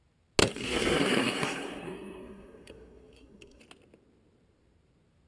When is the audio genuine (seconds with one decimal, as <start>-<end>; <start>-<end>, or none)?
0.0-0.4; 3.6-5.3